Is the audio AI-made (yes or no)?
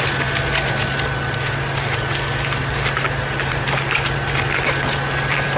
yes